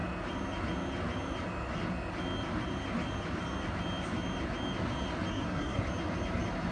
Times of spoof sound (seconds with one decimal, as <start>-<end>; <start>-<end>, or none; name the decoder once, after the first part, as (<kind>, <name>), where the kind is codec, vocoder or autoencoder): 5.3-5.8 (codec, SNAC)